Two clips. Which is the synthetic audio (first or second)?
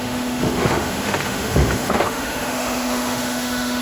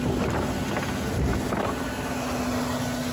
first